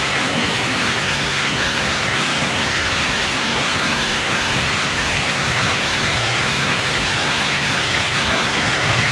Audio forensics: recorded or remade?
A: remade